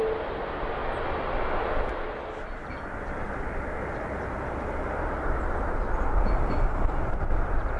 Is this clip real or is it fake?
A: real